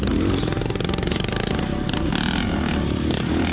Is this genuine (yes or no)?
yes